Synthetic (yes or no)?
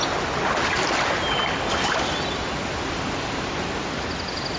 no